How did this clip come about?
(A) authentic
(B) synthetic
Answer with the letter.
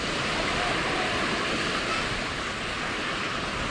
A